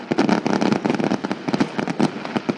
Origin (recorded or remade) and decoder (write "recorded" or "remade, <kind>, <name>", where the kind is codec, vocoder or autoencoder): recorded